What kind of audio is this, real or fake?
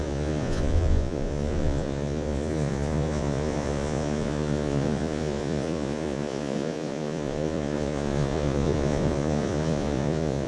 fake